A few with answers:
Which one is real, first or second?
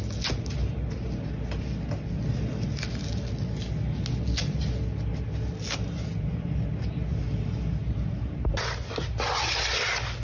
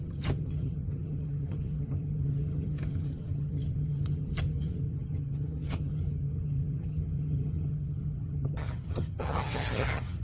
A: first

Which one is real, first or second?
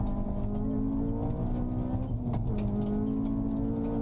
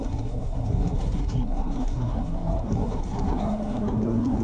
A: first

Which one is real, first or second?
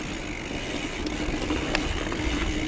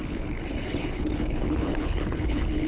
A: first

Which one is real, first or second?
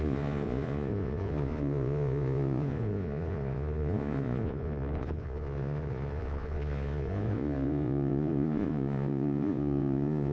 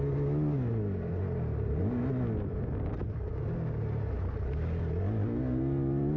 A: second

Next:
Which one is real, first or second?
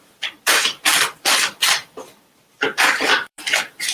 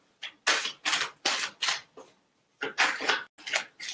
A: second